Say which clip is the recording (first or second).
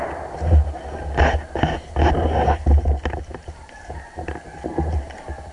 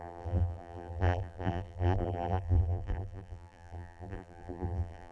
first